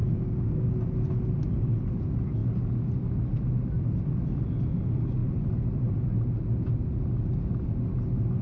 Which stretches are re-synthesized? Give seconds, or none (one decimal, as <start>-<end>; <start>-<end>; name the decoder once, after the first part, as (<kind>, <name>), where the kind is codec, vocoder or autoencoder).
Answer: 0.0-0.7 (codec, DAC)